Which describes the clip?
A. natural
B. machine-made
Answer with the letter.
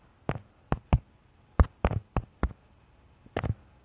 A